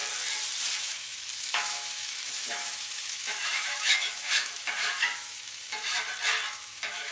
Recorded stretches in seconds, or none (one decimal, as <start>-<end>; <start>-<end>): 0.0-0.7; 5.9-6.5